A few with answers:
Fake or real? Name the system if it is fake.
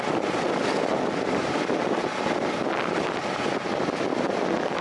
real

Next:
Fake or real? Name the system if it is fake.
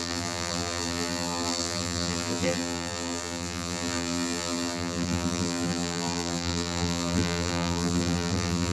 fake, vocoder, BigVGAN v2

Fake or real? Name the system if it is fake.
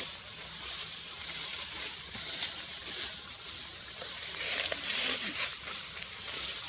fake, vocoder, BigVGAN v2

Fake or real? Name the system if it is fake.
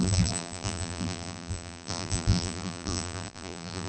fake, vocoder, BigVGAN v2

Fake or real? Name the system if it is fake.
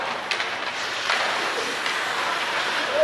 fake, vocoder, BigVGAN v2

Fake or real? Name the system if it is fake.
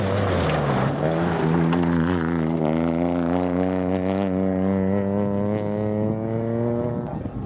real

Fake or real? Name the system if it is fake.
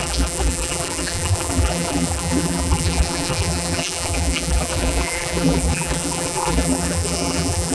fake, vocoder, BigVGAN v2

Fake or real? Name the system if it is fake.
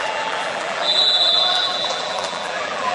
fake, vocoder, BigVGAN v2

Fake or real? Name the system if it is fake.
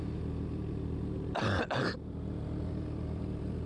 fake, vocoder, BigVGAN v2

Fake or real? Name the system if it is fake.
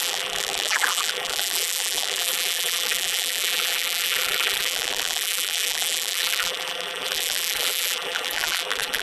fake, vocoder, BigVGAN v2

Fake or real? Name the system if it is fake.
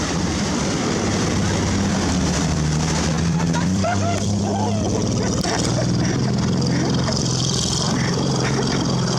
fake, vocoder, BigVGAN v2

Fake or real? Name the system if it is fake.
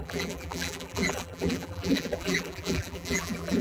fake, vocoder, BigVGAN v2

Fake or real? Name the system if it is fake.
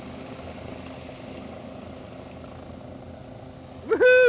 real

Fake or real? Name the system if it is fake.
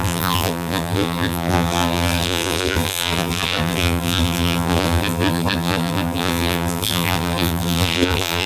fake, vocoder, BigVGAN v2